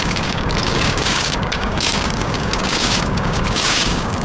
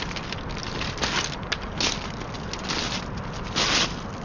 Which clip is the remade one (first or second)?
first